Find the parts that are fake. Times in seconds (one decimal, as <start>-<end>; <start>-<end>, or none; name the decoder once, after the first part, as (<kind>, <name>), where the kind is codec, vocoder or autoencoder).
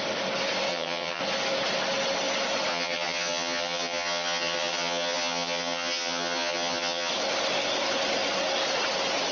0.7-1.2 (vocoder, HiFi-GAN); 2.7-7.1